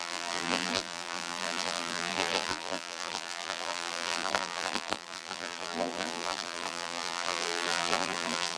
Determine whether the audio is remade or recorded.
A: remade